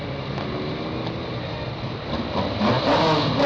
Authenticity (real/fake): real